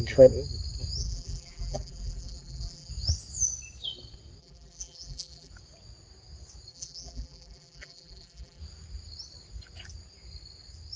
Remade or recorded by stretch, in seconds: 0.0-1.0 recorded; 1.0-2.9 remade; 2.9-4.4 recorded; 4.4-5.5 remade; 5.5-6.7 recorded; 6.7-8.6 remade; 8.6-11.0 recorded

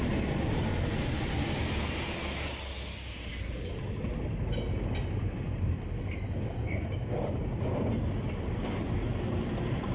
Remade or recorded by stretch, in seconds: 0.0-9.9 recorded

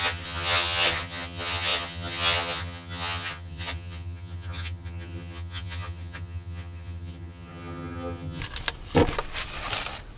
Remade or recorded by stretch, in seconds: 0.0-8.4 remade; 8.4-10.2 recorded

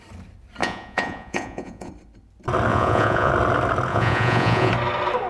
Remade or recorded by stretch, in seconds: 0.0-0.6 recorded; 0.6-1.9 remade; 1.9-2.7 recorded; 2.7-3.3 remade; 3.3-3.9 recorded; 3.9-4.7 remade; 4.7-5.3 recorded